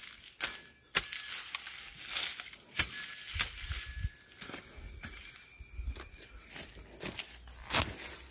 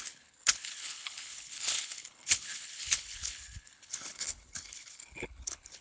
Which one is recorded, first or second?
first